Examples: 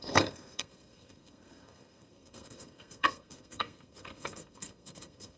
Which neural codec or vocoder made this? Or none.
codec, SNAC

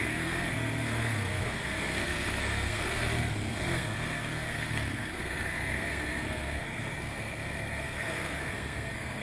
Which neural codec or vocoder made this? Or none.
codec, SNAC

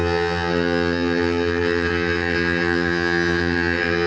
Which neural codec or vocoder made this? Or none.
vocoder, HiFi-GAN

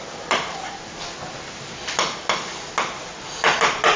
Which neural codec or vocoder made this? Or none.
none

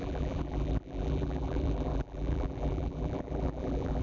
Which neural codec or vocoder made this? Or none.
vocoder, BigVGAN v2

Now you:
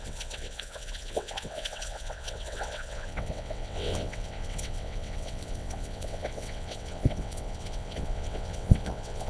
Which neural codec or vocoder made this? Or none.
vocoder, WaveNeXt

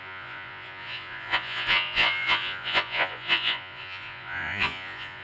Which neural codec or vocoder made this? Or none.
vocoder, Vocos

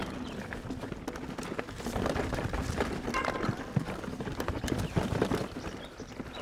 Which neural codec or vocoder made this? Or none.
none